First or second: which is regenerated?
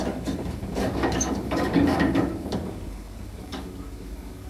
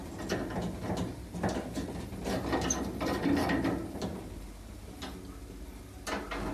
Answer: first